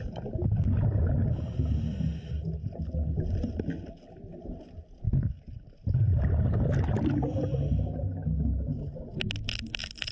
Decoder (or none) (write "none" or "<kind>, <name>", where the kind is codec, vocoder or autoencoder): none